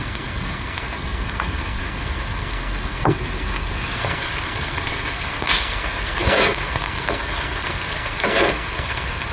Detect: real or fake fake